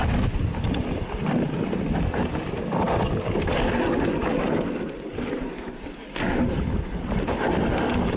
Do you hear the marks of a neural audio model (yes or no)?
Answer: no